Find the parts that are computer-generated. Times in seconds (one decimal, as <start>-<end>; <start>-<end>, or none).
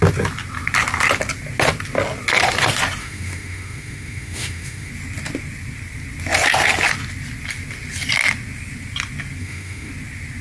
3.0-4.9; 9.4-9.9